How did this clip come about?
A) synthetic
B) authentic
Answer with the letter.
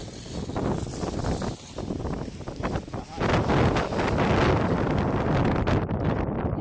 B